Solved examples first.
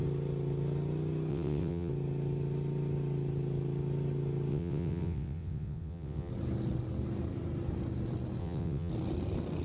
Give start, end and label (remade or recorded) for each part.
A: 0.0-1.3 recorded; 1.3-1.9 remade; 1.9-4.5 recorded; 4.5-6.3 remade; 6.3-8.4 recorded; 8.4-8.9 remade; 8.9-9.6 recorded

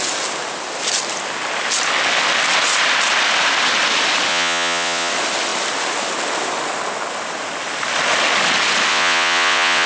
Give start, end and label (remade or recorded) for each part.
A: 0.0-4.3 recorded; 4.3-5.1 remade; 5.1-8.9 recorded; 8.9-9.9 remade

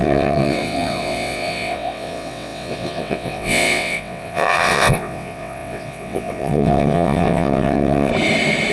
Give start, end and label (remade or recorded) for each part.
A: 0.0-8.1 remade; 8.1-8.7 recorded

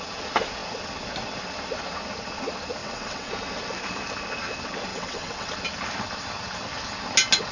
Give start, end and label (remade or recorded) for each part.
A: 0.0-2.8 recorded; 2.8-3.3 remade; 3.3-4.9 recorded; 4.9-5.5 remade; 5.5-7.5 recorded